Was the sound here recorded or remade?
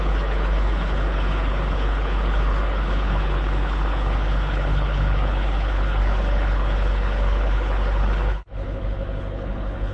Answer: remade